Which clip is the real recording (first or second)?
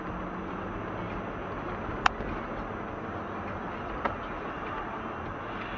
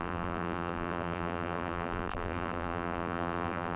first